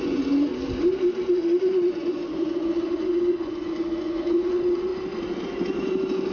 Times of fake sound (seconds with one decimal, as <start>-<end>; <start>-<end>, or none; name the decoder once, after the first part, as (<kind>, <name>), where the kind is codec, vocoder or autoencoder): 0.0-0.5 (vocoder, Vocos); 1.3-4.9